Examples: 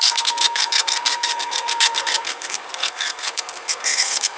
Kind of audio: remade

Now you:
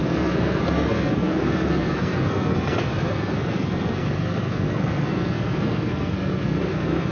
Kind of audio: remade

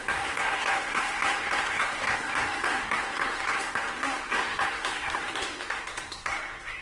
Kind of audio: remade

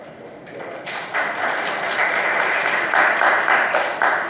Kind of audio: recorded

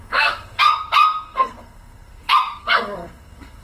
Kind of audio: remade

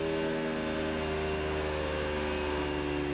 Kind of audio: recorded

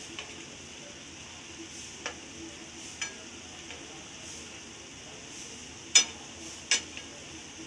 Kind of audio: recorded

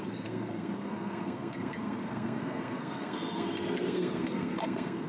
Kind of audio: remade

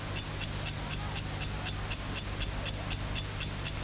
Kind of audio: recorded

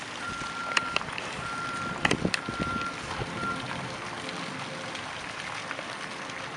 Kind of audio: recorded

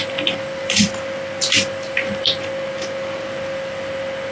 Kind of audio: recorded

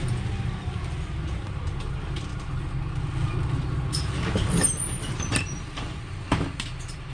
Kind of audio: recorded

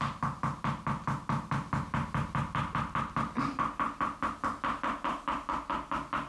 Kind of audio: recorded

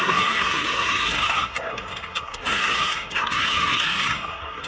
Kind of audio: remade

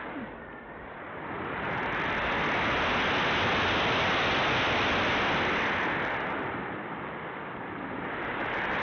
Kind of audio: recorded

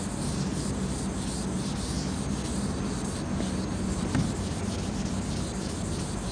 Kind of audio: recorded